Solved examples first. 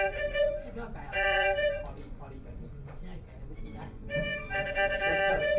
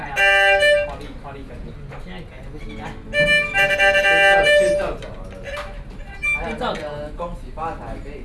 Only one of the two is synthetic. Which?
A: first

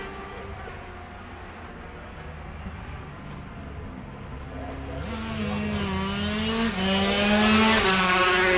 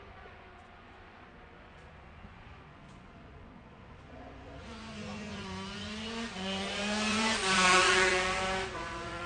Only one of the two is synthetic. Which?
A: second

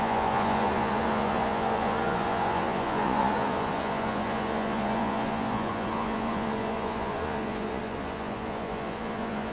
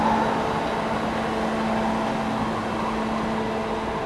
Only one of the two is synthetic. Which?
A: first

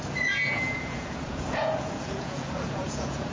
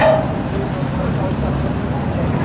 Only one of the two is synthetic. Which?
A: first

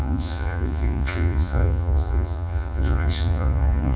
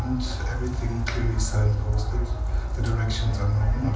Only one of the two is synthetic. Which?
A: first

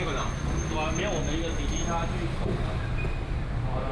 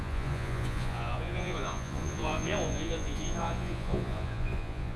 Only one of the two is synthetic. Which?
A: second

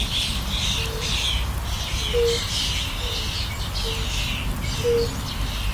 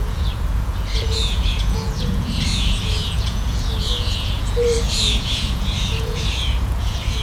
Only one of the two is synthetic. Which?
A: second